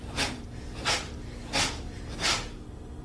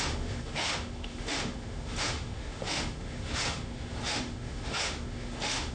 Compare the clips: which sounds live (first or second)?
first